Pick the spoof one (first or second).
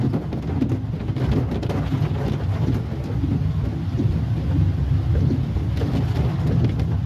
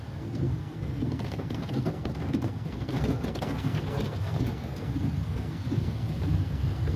second